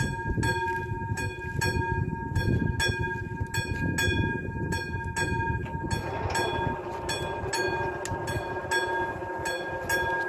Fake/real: real